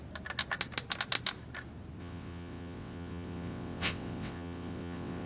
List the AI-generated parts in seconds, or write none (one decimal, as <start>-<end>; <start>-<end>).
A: 2.0-5.3